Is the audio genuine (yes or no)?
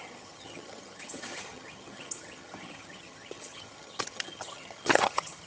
no